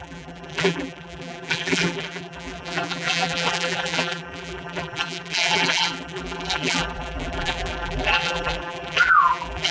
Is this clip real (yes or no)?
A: no